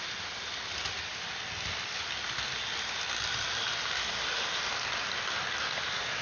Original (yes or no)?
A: yes